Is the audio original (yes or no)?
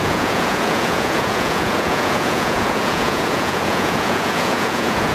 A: no